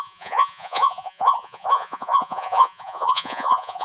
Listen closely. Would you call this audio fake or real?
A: fake